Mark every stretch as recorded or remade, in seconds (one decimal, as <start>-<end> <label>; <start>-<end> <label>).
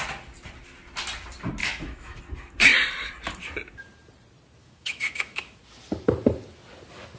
0.0-1.6 recorded; 1.6-2.2 remade; 2.2-4.6 recorded; 4.6-5.6 remade; 5.6-7.2 recorded